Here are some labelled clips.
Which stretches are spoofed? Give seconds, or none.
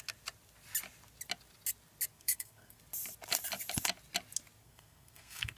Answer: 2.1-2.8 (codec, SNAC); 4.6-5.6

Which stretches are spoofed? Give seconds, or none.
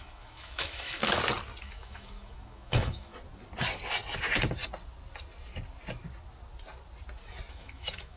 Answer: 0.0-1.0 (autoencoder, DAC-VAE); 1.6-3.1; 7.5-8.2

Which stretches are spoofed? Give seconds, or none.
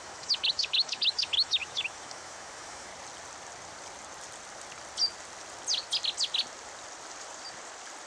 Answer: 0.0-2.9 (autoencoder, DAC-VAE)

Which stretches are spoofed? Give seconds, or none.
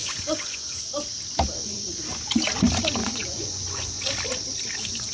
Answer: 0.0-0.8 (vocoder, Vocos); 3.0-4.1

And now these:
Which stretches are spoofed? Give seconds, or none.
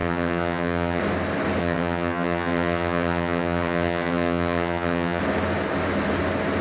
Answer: 0.0-1.0 (vocoder, HiFi-GAN); 1.6-5.2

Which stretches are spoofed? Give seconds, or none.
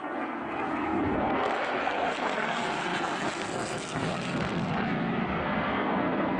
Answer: 0.0-6.4 (codec, SNAC)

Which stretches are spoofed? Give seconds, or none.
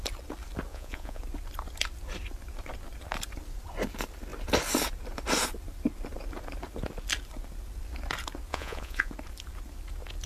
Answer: 0.7-1.2 (vocoder, Vocos); 8.5-9.1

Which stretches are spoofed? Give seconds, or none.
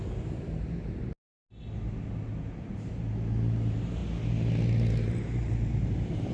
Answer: 0.0-1.3 (vocoder, BigVGAN v2); 2.5-4.0; 4.9-6.3